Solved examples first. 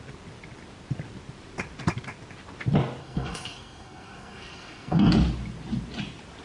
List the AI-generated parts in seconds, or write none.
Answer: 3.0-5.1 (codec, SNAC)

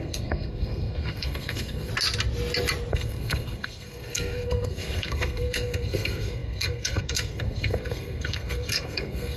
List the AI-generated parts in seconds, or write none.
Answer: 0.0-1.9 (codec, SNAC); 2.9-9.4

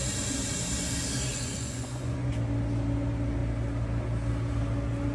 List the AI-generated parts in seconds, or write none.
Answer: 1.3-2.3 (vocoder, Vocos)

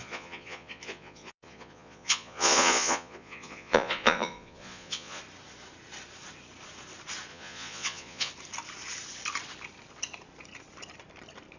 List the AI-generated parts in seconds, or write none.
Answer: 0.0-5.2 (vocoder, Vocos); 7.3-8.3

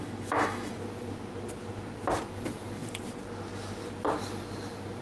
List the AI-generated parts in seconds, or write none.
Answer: 0.0-0.7 (autoencoder, DAC-VAE)